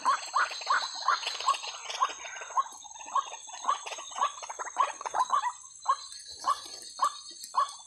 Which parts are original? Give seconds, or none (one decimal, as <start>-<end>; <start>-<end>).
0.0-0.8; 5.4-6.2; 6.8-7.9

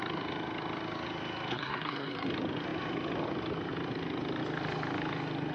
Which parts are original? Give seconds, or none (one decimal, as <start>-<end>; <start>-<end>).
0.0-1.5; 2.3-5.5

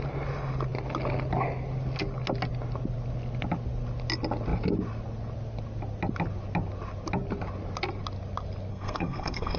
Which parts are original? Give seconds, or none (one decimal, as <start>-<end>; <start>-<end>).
0.0-8.7

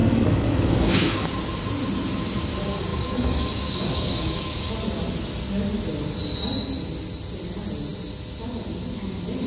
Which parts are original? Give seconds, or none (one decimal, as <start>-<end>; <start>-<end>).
1.4-2.9; 4.7-9.5

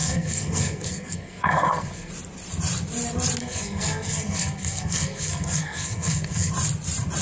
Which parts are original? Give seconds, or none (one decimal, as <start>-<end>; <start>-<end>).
2.1-3.4; 6.5-7.2

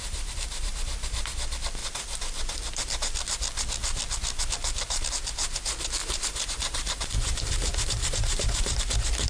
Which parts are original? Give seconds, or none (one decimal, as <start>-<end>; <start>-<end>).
1.3-6.0; 8.8-9.3

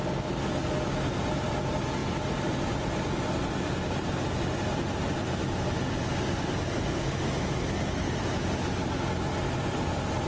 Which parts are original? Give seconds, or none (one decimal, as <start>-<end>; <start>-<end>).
0.0-10.3

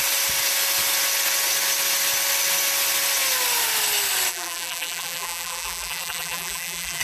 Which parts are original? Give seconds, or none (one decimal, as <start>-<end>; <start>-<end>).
0.0-4.3